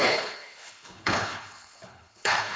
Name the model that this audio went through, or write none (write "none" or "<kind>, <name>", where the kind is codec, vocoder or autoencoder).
codec, HILCodec